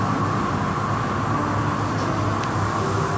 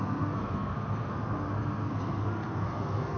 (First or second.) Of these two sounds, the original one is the first